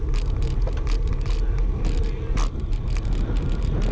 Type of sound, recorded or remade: recorded